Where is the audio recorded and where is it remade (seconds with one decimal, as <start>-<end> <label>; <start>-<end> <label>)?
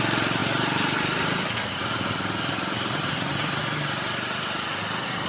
0.0-5.3 recorded